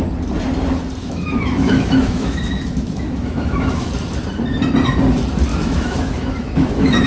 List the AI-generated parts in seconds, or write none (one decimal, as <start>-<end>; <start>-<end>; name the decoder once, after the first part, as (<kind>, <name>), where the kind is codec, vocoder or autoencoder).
1.0-3.9 (autoencoder, DAC-VAE); 5.5-7.1